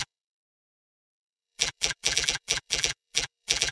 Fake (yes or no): yes